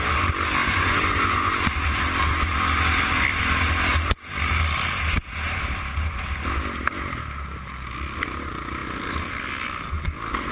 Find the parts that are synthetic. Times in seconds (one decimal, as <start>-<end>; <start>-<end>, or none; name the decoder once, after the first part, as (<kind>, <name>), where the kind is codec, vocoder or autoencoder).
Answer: 0.6-1.5 (vocoder, Vocos)